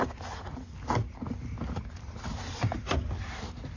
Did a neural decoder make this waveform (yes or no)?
no